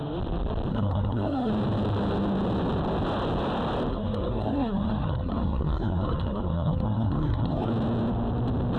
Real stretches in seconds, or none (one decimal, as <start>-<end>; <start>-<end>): 0.0-0.7; 1.5-3.9; 7.7-8.8

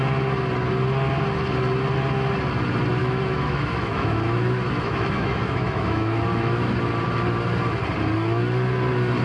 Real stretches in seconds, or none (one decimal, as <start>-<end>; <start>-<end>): 0.0-3.0; 6.8-9.2

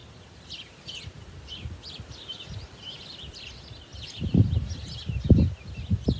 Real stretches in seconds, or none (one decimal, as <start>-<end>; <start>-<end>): 1.5-2.3; 3.4-6.2

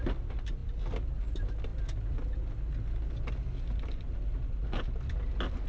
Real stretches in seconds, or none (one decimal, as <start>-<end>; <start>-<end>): 0.0-5.7

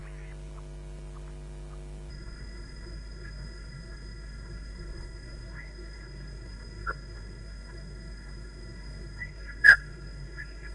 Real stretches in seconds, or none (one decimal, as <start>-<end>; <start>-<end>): 0.0-2.1

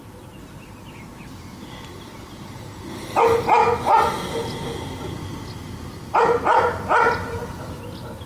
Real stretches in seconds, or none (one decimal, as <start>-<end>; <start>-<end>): 0.0-8.3